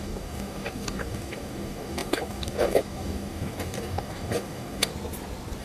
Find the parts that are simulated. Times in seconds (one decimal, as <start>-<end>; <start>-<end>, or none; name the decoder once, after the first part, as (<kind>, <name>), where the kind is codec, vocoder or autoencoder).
0.0-4.9 (codec, DAC)